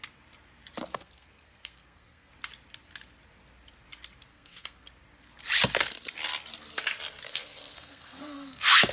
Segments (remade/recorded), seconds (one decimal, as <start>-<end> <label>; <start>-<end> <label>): 0.0-0.9 recorded; 0.9-2.3 remade; 2.3-4.3 recorded; 4.3-4.9 remade; 4.9-7.3 recorded; 7.3-8.9 remade

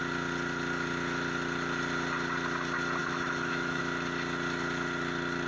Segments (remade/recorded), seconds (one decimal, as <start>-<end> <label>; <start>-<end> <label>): 0.0-3.0 recorded; 3.0-3.8 remade; 3.8-5.5 recorded

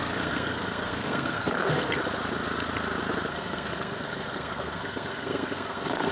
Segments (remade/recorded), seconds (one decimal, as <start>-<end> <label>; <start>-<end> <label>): 0.0-2.0 remade; 2.0-3.3 recorded; 3.3-6.1 remade

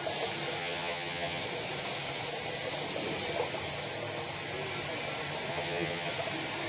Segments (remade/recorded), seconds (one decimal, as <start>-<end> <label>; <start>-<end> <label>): 0.0-0.6 recorded; 0.6-1.4 remade; 1.4-5.5 recorded; 5.5-6.1 remade; 6.1-6.7 recorded

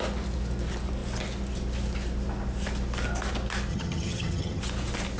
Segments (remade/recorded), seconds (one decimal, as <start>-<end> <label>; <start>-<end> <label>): 0.0-3.7 recorded; 3.7-4.6 remade; 4.6-5.2 recorded